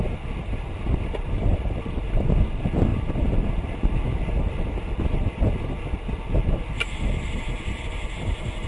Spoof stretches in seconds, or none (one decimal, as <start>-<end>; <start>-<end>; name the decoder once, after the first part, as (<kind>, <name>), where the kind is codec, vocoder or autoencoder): 0.0-4.1 (vocoder, BigVGAN v2)